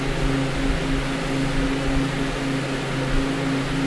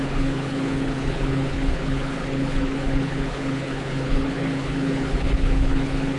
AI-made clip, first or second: second